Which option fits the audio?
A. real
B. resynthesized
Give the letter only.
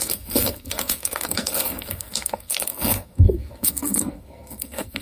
B